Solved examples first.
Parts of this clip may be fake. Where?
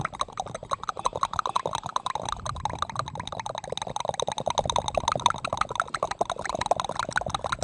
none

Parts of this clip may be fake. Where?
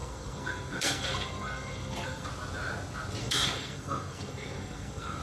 0.0-2.3; 3.2-5.2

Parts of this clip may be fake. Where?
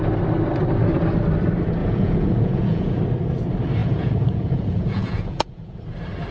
1.8-3.0; 3.8-5.8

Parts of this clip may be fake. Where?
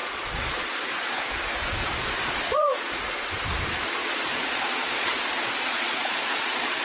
0.0-1.2; 1.8-3.0; 4.0-6.8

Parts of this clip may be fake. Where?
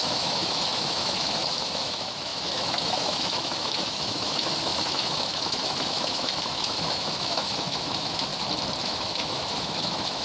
0.0-8.3; 8.8-10.2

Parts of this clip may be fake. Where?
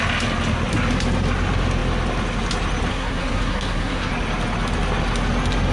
2.9-4.1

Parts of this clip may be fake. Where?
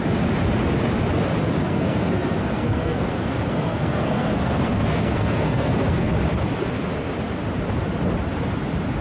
1.6-6.1